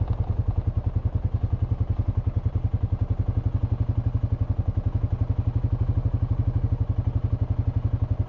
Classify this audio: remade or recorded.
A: recorded